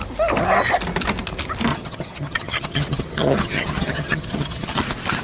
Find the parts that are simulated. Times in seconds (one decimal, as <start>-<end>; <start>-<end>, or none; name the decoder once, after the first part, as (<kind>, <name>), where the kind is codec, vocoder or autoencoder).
1.7-4.8 (vocoder, HiFi-GAN)